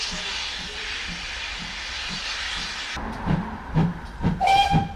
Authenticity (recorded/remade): recorded